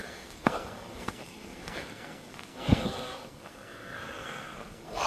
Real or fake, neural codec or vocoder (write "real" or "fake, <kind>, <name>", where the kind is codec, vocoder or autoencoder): fake, codec, SNAC